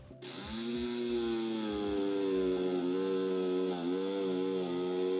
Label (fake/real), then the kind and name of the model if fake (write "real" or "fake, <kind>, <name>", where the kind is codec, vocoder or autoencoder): real